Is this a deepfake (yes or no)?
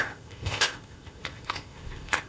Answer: yes